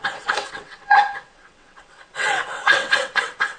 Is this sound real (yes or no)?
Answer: no